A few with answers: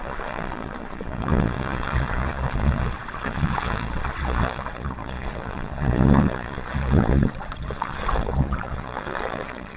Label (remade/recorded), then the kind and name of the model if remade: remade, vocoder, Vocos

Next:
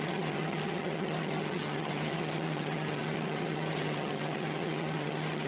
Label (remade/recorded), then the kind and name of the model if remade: remade, vocoder, HiFi-GAN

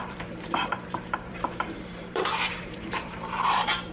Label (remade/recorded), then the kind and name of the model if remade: remade, vocoder, BigVGAN v2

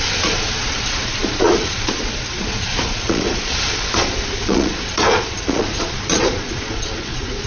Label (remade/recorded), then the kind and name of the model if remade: remade, vocoder, Vocos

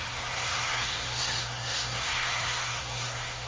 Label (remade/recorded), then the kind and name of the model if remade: remade, codec, SNAC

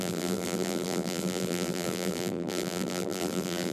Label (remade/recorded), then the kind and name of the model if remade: remade, vocoder, BigVGAN v2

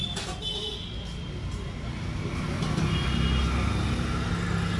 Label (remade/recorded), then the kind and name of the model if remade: recorded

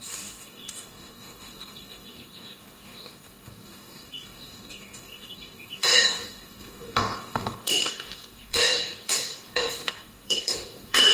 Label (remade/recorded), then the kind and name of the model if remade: remade, codec, DAC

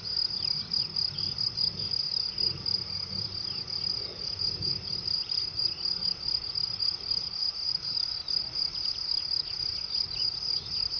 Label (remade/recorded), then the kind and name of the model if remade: recorded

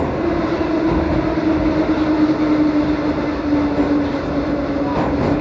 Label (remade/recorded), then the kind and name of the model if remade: recorded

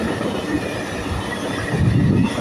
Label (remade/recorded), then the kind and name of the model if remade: recorded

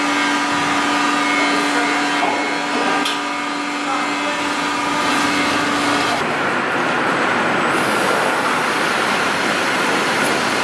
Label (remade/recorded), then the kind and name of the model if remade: recorded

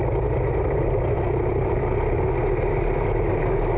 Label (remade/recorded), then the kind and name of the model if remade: recorded